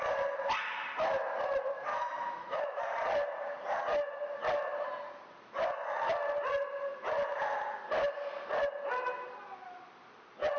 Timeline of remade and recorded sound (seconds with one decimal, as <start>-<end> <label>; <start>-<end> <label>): 0.0-1.9 recorded; 1.9-2.8 remade; 2.8-10.6 recorded